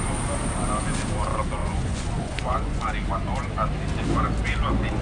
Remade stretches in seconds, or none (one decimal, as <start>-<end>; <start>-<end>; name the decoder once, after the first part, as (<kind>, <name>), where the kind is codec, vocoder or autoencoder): 1.6-2.8 (vocoder, Vocos)